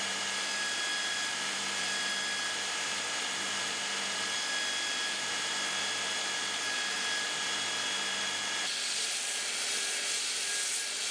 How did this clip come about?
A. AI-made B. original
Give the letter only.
B